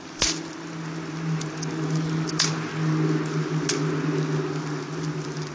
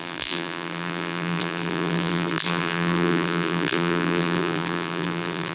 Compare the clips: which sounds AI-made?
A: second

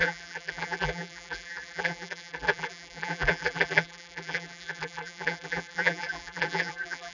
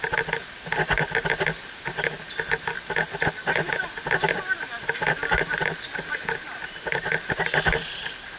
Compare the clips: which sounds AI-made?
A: first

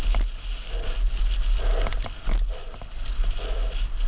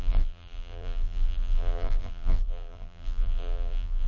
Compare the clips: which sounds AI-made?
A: second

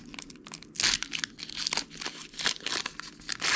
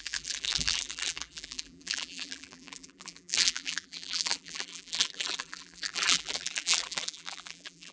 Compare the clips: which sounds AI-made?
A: second